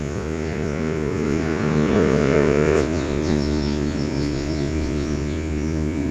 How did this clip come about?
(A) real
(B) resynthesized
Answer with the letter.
B